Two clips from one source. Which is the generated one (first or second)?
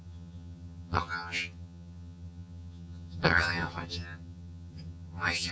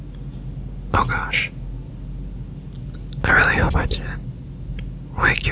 first